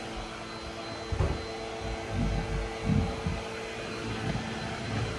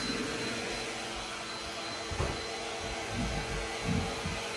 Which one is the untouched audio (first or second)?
first